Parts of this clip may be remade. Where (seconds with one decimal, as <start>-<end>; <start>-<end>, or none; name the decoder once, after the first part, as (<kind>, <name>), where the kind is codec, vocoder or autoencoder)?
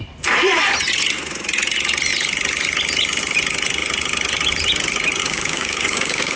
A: 5.2-6.4 (codec, DAC)